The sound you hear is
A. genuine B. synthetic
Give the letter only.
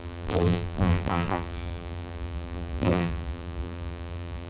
B